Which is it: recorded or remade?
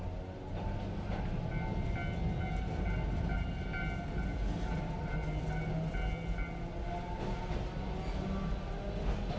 recorded